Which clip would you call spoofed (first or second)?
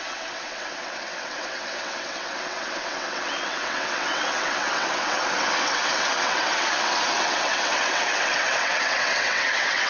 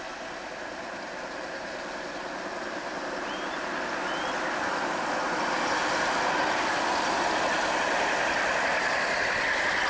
first